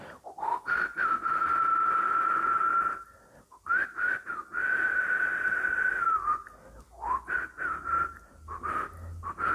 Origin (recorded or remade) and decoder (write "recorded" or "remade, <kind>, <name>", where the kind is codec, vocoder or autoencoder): recorded